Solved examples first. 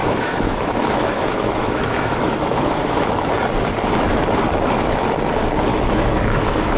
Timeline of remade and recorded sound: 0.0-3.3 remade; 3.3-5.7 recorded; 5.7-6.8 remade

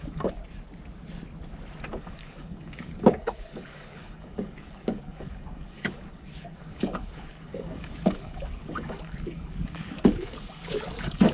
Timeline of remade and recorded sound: 0.0-0.4 remade; 0.4-1.9 recorded; 1.9-11.3 remade

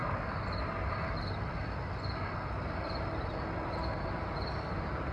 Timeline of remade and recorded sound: 0.0-5.1 recorded

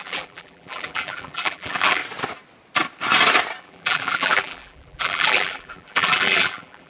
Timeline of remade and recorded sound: 0.0-2.0 remade; 2.0-3.6 recorded; 3.6-6.9 remade

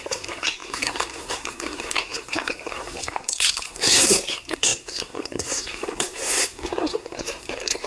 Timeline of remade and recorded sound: 0.0-7.9 remade